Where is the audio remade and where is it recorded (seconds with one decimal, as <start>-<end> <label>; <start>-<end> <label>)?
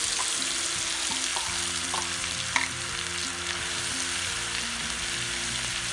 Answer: 0.0-5.9 recorded